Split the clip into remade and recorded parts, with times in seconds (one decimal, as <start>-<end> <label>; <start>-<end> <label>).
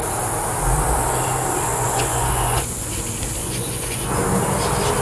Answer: 0.0-1.7 recorded; 1.7-2.9 remade; 2.9-3.4 recorded; 3.4-4.2 remade; 4.2-5.0 recorded